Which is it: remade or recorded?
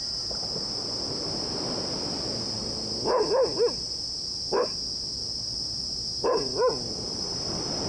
recorded